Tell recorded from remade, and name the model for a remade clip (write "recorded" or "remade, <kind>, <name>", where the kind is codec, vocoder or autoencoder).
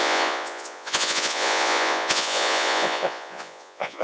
remade, vocoder, Vocos